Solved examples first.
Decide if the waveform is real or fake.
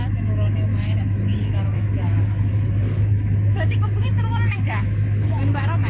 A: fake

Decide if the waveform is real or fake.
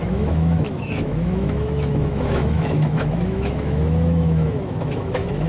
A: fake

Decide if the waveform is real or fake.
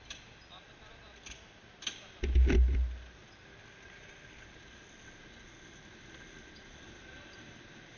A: real